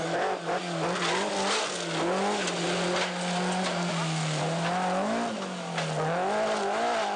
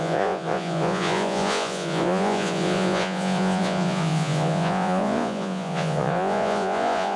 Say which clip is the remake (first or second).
second